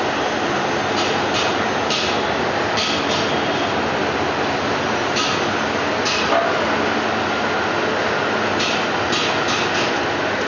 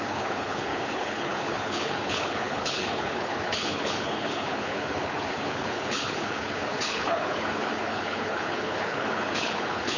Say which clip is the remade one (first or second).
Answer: second